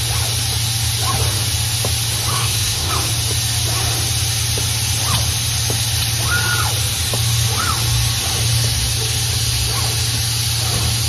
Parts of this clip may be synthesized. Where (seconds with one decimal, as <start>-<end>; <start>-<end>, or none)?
2.3-2.9